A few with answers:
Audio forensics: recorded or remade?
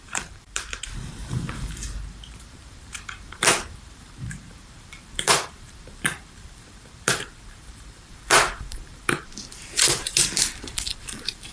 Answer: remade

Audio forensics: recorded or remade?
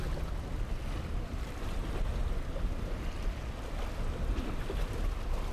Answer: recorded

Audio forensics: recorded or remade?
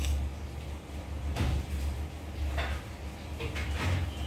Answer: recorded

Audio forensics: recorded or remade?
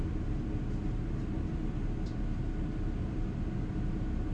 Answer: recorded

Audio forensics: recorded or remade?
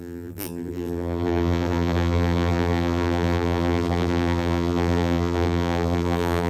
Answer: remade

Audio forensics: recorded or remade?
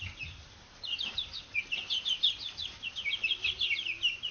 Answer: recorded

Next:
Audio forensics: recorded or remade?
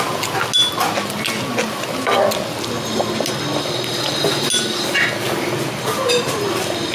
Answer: recorded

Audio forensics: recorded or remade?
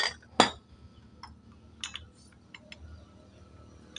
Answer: recorded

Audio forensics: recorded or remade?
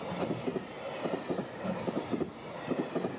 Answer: recorded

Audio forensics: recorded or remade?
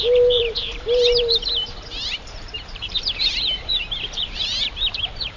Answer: remade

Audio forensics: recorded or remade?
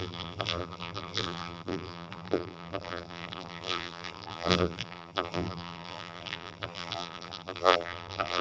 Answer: remade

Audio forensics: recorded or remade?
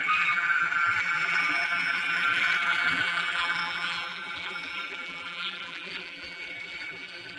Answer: remade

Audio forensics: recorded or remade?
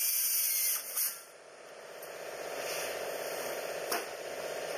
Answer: recorded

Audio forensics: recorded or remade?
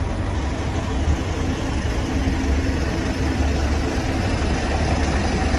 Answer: recorded